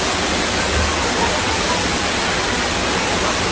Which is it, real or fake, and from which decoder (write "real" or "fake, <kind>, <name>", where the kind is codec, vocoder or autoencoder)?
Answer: real